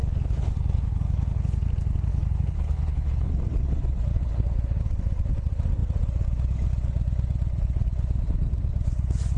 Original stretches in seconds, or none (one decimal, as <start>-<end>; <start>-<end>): 1.7-2.1; 3.3-4.1; 4.8-9.4